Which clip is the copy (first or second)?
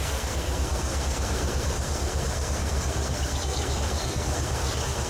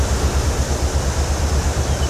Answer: first